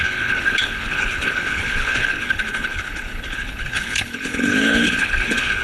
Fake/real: fake